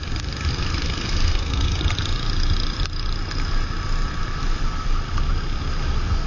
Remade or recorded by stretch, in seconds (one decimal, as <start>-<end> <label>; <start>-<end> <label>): 0.0-0.5 recorded; 0.5-1.8 remade; 1.8-6.3 recorded